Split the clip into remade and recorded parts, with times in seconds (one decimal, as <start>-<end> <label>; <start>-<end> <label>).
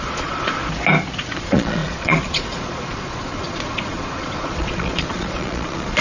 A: 0.0-0.6 remade; 0.6-1.4 recorded; 1.4-6.0 remade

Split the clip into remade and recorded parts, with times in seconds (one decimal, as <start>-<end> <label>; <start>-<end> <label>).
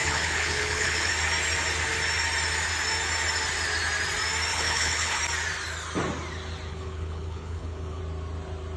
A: 0.0-1.1 remade; 1.1-4.5 recorded; 4.5-5.2 remade; 5.2-6.7 recorded; 6.7-8.0 remade; 8.0-8.8 recorded